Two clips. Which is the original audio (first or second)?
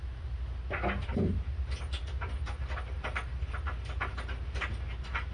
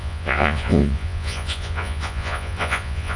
first